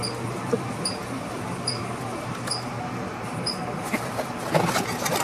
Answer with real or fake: real